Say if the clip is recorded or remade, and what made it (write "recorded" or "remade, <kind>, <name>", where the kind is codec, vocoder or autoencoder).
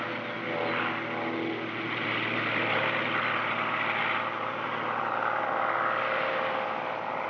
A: recorded